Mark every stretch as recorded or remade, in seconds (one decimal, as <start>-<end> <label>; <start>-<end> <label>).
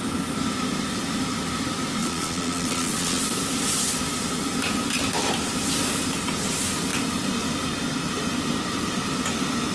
0.0-2.0 recorded; 2.0-3.2 remade; 3.2-9.7 recorded